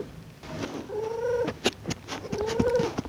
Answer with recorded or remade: recorded